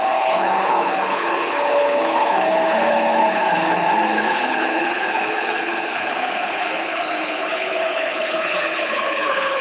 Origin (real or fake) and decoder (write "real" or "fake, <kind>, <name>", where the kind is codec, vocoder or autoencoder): fake, codec, HILCodec